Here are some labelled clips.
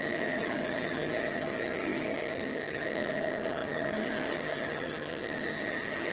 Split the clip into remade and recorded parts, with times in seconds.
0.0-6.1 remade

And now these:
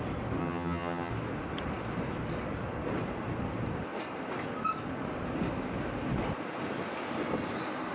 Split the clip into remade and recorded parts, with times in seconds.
0.0-0.4 recorded; 0.4-1.1 remade; 1.1-7.9 recorded